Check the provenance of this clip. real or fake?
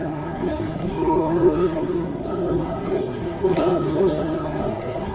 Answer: fake